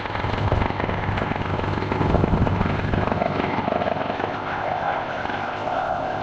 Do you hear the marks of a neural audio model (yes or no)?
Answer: yes